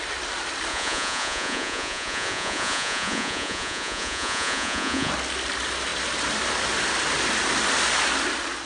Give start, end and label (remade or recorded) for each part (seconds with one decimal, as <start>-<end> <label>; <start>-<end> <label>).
0.0-0.7 recorded; 0.7-5.1 remade; 5.1-8.7 recorded